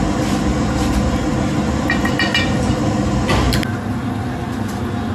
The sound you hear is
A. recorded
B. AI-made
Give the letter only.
A